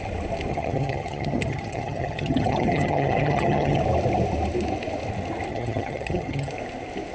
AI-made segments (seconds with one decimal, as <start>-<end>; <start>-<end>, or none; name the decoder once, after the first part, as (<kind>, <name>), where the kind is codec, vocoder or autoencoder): 0.5-3.8 (vocoder, HiFi-GAN); 5.5-6.5